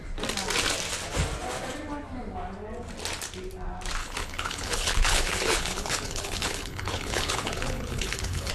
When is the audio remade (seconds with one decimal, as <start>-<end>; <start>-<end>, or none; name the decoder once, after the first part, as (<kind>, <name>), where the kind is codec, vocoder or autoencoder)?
4.0-8.5 (codec, HILCodec)